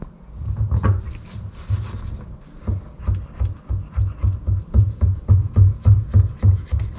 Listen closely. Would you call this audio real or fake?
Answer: real